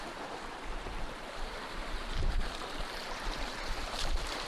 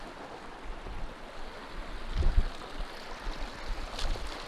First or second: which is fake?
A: first